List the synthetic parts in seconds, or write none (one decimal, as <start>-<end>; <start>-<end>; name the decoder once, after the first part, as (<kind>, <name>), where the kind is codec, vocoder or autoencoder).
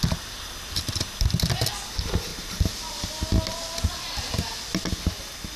none